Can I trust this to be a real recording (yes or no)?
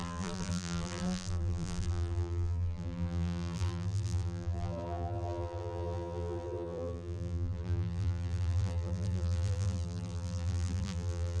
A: no